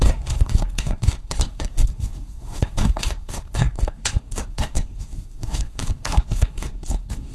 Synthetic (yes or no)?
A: yes